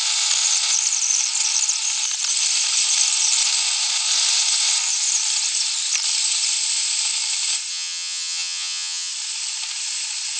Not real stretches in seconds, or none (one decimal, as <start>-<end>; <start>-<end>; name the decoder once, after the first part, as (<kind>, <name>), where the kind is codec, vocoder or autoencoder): 7.7-9.1 (vocoder, HiFi-GAN)